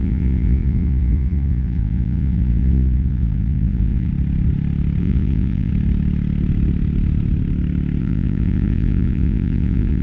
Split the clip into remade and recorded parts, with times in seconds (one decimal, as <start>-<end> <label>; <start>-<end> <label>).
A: 0.0-4.1 remade; 4.1-5.0 recorded; 5.0-5.7 remade; 5.7-8.0 recorded; 8.0-10.0 remade